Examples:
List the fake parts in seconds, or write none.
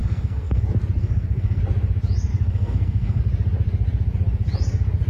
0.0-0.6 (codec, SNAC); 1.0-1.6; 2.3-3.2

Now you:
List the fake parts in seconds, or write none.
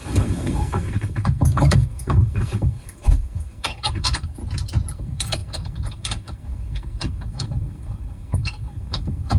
0.0-4.4 (codec, SNAC); 4.9-9.4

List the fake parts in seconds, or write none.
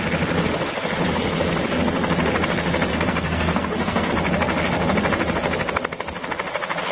2.9-4.1 (codec, SNAC)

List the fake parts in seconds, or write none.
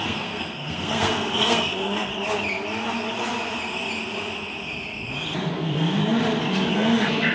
0.0-2.1 (codec, SNAC); 5.5-6.0; 6.7-7.3